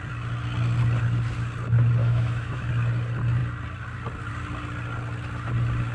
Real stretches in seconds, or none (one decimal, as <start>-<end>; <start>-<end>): 0.0-2.0; 2.7-5.9

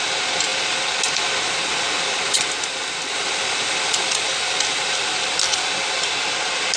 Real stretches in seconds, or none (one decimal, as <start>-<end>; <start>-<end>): 0.0-6.8

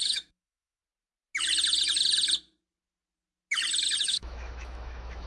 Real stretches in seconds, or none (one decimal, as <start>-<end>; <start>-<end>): 0.8-4.0

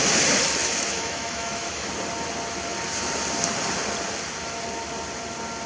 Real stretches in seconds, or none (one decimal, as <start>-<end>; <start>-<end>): 0.0-0.6; 1.9-5.7

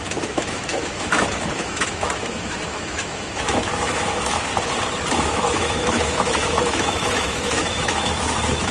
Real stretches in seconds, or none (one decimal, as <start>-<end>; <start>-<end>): 4.5-5.1

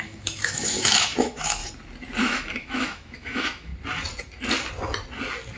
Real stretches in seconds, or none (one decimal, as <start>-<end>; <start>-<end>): 1.6-2.2; 3.7-5.6

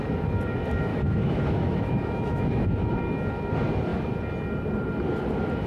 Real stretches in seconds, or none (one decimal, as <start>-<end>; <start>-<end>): 0.0-0.9; 2.9-5.7